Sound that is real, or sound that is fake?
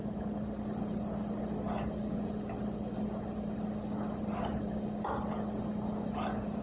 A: real